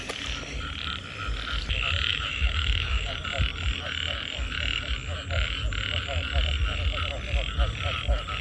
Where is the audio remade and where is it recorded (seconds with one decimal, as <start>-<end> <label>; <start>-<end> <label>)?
0.0-2.1 recorded; 2.1-3.1 remade; 3.1-8.4 recorded